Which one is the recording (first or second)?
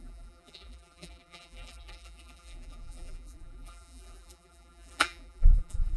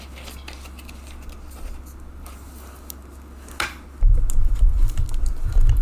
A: second